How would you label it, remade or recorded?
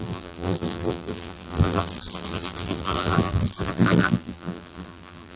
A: remade